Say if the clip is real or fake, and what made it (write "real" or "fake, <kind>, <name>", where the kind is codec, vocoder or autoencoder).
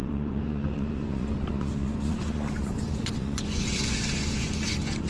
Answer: fake, vocoder, Vocos